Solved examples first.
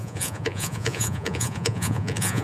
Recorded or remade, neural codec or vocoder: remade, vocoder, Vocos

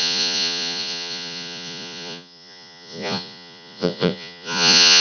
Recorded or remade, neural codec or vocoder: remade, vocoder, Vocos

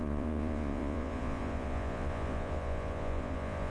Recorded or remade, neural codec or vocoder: remade, vocoder, Vocos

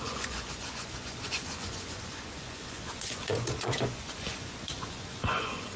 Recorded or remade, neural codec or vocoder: remade, vocoder, Vocos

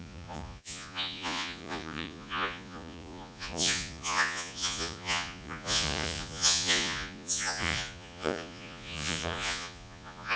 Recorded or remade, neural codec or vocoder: remade, vocoder, Vocos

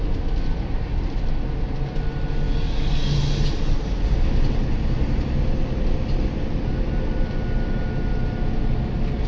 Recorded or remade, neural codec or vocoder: recorded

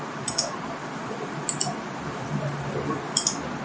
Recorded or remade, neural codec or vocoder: recorded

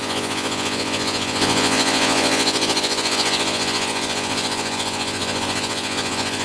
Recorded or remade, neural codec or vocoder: remade, vocoder, Vocos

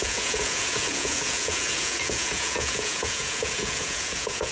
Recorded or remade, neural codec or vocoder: remade, vocoder, Vocos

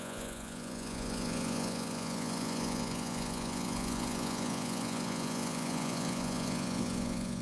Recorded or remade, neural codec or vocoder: remade, vocoder, Vocos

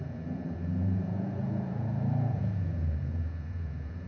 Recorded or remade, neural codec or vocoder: remade, vocoder, Vocos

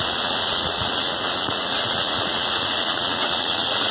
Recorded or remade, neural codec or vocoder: remade, vocoder, Vocos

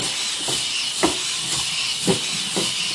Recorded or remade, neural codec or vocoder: recorded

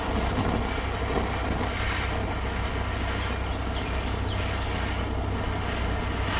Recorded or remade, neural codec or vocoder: recorded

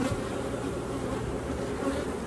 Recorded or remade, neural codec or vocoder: recorded